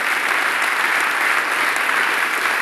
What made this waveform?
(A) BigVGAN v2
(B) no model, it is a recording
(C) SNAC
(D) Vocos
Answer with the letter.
B